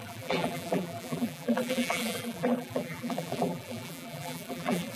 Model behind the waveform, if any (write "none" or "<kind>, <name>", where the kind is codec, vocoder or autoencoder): vocoder, BigVGAN v2